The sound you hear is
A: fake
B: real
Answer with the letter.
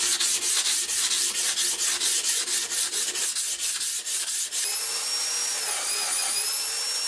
B